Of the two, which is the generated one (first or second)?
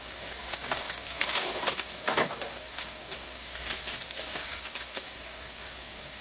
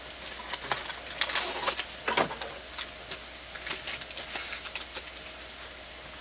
first